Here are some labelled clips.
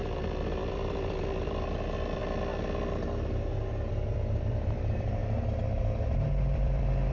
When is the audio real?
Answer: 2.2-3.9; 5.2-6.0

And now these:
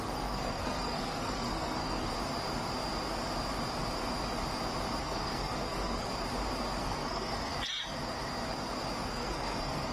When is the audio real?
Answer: 2.1-5.0; 6.1-6.8; 7.5-9.1

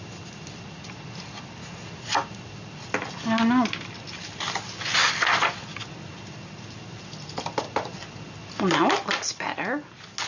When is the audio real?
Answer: 0.0-10.3

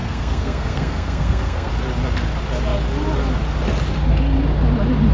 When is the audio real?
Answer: 1.7-5.1

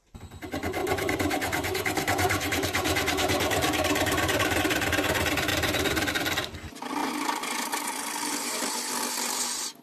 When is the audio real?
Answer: 0.0-0.8; 4.6-5.5; 6.1-9.8